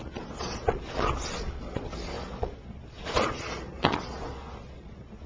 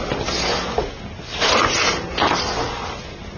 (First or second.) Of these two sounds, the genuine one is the second